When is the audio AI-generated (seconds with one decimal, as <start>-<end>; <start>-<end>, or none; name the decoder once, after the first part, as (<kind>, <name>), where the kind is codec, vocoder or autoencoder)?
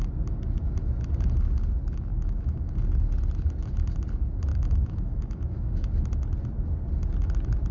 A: 2.1-2.7 (autoencoder, DAC-VAE); 4.5-5.9